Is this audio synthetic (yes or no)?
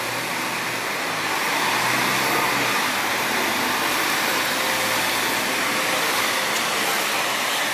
no